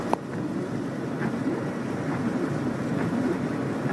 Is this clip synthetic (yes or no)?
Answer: no